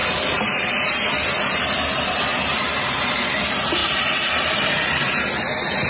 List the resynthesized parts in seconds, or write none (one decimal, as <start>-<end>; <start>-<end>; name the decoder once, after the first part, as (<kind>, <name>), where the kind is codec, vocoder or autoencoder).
0.0-0.7 (vocoder, BigVGAN v2); 2.3-3.3; 3.8-5.0